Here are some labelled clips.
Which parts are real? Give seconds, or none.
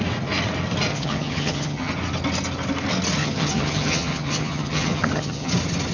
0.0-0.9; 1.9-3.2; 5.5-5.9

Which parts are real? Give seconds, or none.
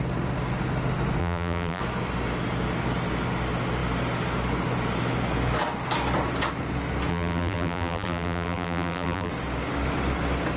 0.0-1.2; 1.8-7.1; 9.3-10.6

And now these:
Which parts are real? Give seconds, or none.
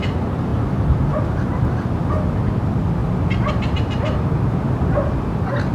0.0-5.7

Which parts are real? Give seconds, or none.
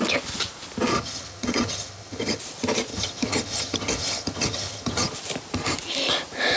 0.0-0.9; 2.4-2.9; 5.1-6.6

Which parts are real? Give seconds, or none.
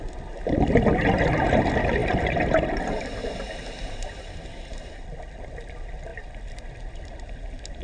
0.0-7.8